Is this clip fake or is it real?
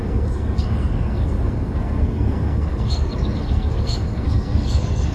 fake